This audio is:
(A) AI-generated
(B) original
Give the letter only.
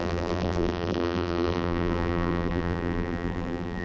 A